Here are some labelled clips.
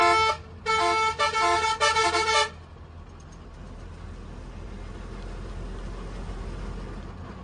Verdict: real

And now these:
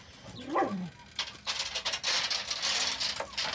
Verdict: real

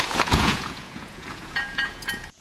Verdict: fake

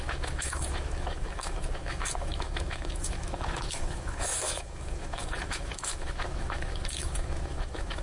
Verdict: fake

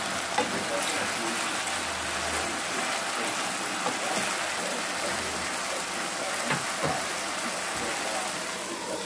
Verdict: real